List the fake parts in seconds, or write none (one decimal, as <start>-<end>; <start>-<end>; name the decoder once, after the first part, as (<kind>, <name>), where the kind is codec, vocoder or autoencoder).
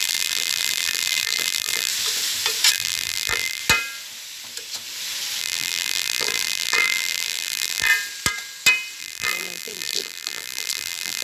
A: 0.0-1.9 (vocoder, BigVGAN v2); 2.7-3.6; 5.4-7.9; 9.0-11.2